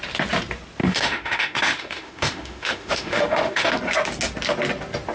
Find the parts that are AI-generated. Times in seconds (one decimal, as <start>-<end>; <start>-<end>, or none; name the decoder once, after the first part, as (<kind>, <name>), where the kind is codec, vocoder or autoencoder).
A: 0.8-3.7 (autoencoder, DAC-VAE)